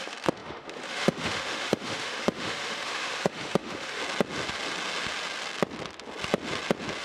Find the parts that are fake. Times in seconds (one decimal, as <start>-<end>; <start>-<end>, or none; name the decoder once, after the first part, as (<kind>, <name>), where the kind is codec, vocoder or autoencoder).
0.0-4.0 (autoencoder, DAC-VAE)